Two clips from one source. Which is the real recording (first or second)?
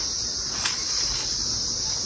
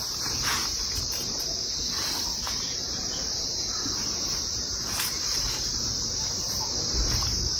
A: first